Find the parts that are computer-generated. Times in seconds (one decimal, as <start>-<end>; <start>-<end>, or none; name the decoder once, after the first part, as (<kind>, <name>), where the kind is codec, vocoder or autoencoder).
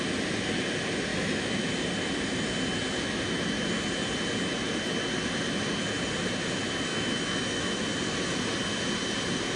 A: 1.1-1.7 (autoencoder, DAC-VAE); 6.9-7.8